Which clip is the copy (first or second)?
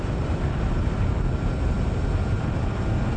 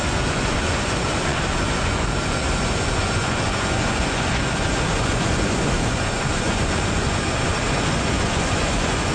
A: second